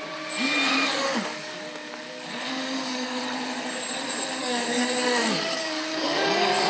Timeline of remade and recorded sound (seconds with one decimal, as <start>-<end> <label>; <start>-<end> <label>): 0.0-0.9 recorded; 0.9-3.2 remade; 3.2-4.4 recorded; 4.4-6.7 remade

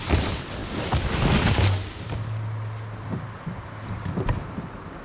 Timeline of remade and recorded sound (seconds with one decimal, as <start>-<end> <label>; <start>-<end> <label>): 0.0-5.0 recorded

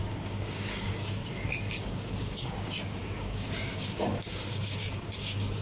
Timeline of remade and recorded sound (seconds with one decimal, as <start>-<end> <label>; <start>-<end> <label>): 0.0-1.2 remade; 1.2-1.8 recorded; 1.8-5.6 remade

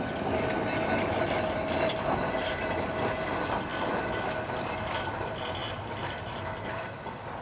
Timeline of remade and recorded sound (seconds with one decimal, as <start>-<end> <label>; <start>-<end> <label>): 0.0-7.4 recorded

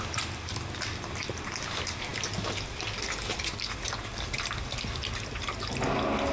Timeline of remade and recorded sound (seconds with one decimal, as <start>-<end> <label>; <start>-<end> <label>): 0.0-6.3 recorded